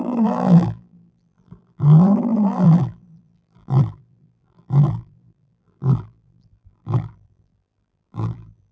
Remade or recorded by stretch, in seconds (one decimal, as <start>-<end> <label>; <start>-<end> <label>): 0.0-8.7 remade